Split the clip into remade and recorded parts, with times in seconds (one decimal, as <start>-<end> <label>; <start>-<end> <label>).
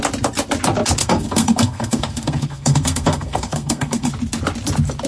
0.0-1.0 recorded; 1.0-4.1 remade; 4.1-5.1 recorded